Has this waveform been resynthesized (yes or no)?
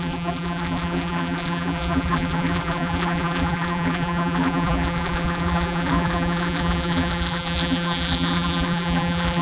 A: yes